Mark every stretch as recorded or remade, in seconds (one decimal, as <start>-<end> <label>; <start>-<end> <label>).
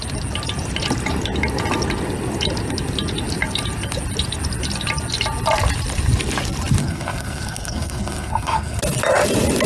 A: 0.0-6.8 recorded; 6.8-8.8 remade; 8.8-9.7 recorded